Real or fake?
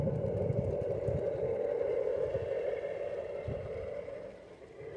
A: real